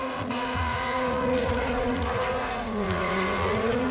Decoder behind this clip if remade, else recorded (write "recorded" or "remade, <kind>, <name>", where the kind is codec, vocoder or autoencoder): remade, vocoder, Vocos